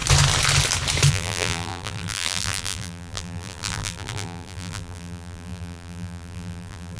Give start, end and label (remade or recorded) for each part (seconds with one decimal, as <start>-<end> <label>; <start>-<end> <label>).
0.0-1.1 recorded; 1.1-7.0 remade